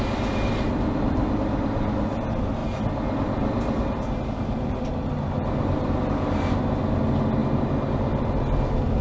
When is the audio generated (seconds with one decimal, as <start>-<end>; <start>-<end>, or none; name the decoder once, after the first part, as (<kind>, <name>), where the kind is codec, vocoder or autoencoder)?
none

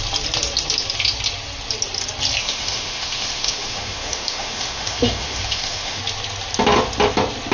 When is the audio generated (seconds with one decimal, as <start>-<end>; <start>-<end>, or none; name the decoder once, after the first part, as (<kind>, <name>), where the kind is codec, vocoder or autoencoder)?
2.4-6.0 (autoencoder, DAC-VAE)

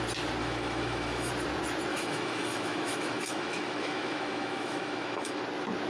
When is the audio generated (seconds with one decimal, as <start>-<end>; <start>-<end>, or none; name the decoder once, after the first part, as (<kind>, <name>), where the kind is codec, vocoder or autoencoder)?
0.4-1.3 (autoencoder, DAC-VAE); 1.9-5.4